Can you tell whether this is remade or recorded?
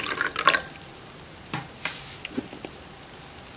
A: recorded